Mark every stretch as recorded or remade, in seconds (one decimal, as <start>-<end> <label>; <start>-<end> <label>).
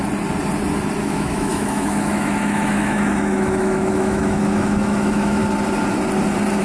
0.0-1.0 recorded; 1.0-5.4 remade; 5.4-6.6 recorded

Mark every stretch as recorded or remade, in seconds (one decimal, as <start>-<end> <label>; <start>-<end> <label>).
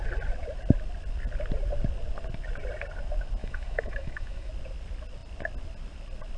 0.0-3.4 recorded; 3.4-4.5 remade; 4.5-6.4 recorded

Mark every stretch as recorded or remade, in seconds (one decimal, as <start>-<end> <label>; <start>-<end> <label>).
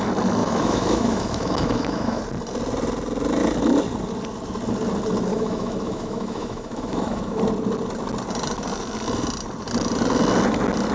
0.0-0.4 recorded; 0.4-2.2 remade; 2.2-5.3 recorded; 5.3-7.4 remade; 7.4-10.9 recorded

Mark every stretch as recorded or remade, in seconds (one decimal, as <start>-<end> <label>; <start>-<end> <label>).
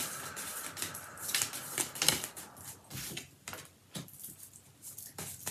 0.0-5.5 recorded